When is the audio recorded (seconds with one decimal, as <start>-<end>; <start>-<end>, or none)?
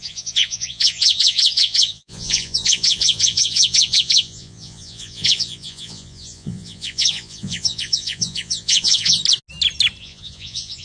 9.2-10.0